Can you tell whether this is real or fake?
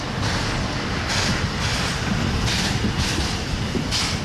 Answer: real